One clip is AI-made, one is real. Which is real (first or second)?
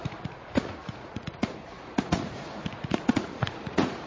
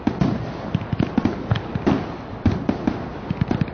second